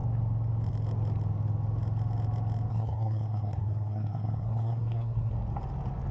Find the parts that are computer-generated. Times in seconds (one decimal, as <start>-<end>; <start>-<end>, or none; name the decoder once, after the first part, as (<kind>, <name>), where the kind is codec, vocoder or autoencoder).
2.7-5.3 (codec, SNAC)